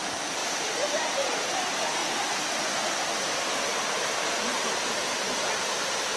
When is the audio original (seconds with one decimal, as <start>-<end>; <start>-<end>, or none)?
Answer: 0.0-6.2